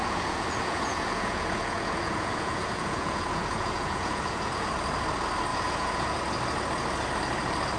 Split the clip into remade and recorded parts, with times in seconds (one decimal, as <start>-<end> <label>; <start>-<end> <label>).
0.0-4.7 remade; 4.7-5.5 recorded; 5.5-6.2 remade; 6.2-7.8 recorded